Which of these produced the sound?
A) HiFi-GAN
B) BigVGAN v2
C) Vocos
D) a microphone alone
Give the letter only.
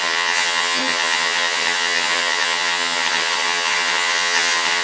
A